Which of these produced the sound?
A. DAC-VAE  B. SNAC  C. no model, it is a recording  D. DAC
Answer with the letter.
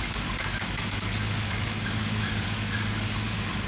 D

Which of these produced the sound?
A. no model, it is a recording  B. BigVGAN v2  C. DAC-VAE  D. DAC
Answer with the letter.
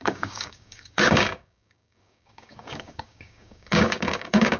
D